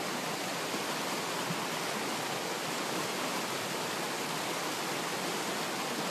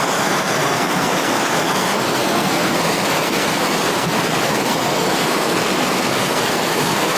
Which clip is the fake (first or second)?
second